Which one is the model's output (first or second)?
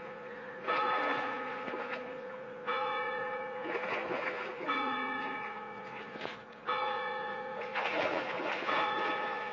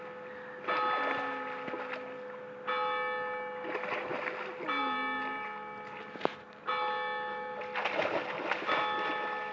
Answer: first